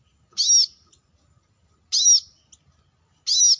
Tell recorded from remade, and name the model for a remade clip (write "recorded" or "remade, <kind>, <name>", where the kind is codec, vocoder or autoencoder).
recorded